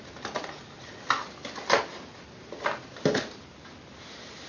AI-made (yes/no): no